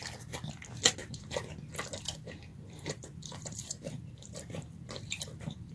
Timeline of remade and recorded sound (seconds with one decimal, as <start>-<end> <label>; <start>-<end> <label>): 0.0-1.0 recorded; 1.0-1.5 remade; 1.5-2.5 recorded; 2.5-5.7 remade